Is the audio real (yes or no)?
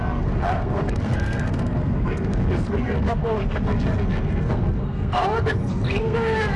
no